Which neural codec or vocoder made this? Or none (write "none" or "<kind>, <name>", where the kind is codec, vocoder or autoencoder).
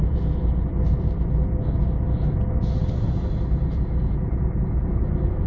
none